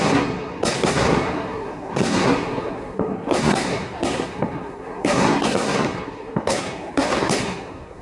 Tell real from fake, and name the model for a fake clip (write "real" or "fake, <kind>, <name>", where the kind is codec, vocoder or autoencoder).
fake, codec, SNAC